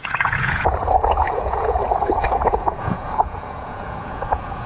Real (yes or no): no